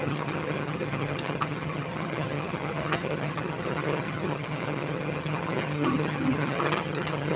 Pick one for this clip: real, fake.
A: fake